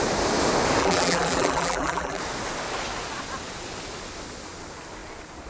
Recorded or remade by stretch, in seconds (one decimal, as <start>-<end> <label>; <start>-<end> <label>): 0.0-0.8 recorded; 0.8-2.2 remade; 2.2-5.5 recorded